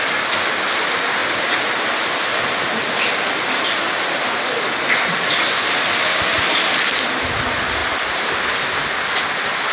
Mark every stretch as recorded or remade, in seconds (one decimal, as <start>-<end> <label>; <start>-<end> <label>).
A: 0.0-9.7 recorded